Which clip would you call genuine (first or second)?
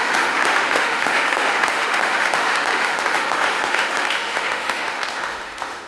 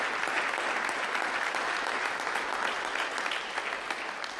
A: second